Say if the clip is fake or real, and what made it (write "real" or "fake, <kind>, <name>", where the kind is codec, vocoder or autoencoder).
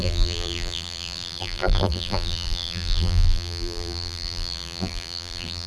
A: fake, vocoder, BigVGAN v2